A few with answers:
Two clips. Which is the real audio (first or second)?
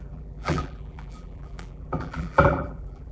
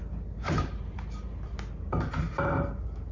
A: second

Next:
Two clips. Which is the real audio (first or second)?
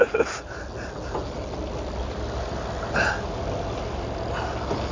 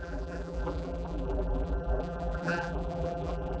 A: first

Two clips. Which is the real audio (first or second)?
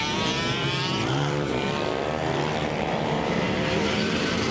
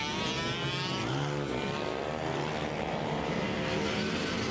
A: second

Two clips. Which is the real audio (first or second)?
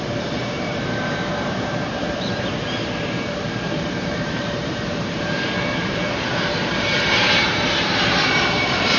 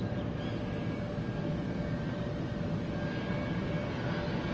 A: second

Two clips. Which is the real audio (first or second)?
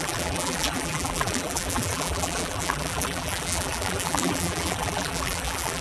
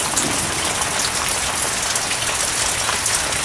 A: second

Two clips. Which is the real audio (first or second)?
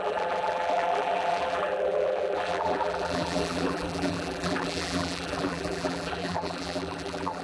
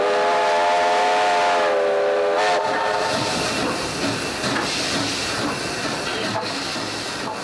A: second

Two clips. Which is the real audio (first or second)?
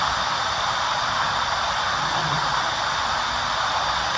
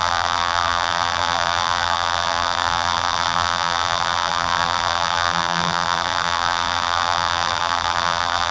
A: first